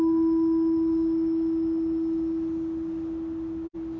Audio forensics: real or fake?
real